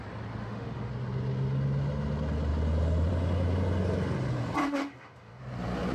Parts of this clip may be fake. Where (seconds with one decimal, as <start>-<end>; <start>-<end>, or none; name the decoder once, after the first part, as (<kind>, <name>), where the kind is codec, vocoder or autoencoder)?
0.4-0.9 (autoencoder, DAC-VAE); 4.6-5.4